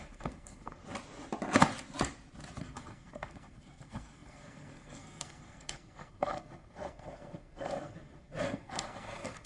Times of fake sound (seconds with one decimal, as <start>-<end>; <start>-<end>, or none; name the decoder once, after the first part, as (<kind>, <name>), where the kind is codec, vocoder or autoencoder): 0.0-0.8 (codec, SNAC); 2.6-9.5